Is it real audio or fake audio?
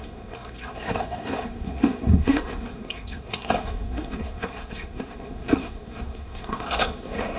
fake